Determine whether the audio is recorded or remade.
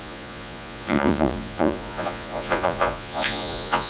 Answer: remade